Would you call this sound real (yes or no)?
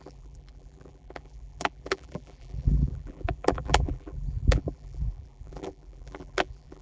no